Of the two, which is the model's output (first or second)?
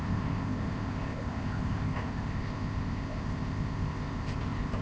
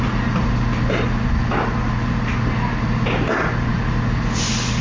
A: first